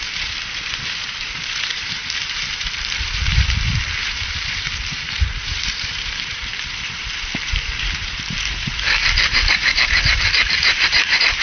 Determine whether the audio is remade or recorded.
remade